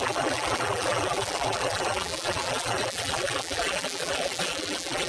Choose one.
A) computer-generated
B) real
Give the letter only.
A